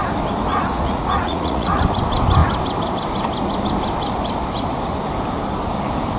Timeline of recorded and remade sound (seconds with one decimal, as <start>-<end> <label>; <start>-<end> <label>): 0.0-0.5 recorded; 0.5-1.8 remade; 1.8-6.2 recorded